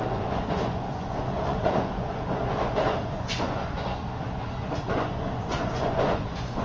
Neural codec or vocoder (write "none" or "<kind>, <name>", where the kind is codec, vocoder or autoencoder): vocoder, Vocos